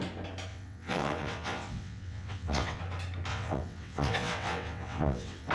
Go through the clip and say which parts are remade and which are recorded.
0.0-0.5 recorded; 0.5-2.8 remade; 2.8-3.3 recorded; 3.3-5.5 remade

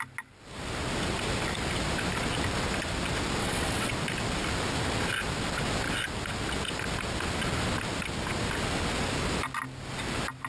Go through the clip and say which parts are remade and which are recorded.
0.0-3.4 recorded; 3.4-3.9 remade; 3.9-10.5 recorded

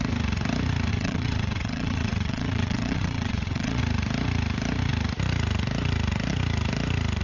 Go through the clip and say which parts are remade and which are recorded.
0.0-0.9 recorded; 0.9-3.8 remade; 3.8-7.2 recorded

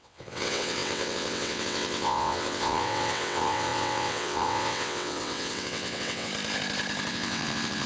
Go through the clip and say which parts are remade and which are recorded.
0.0-6.3 remade; 6.3-7.1 recorded; 7.1-7.9 remade

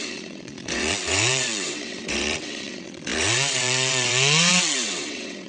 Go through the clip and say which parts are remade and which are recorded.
0.0-5.5 remade

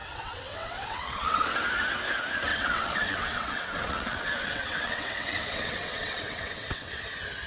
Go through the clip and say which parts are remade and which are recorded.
0.0-1.6 remade; 1.6-2.5 recorded; 2.5-7.0 remade; 7.0-7.5 recorded

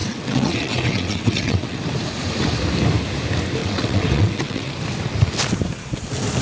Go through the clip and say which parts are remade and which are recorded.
0.0-1.8 remade; 1.8-3.6 recorded; 3.6-4.7 remade; 4.7-6.4 recorded